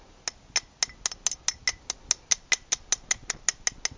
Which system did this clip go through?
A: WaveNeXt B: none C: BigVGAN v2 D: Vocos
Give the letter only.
B